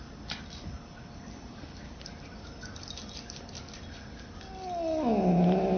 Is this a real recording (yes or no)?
yes